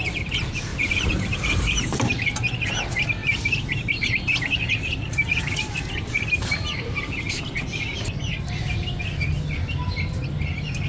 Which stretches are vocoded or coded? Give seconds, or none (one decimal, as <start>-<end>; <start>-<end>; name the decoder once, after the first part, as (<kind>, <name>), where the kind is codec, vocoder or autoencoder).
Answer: 0.7-2.7 (vocoder, BigVGAN v2); 3.2-7.4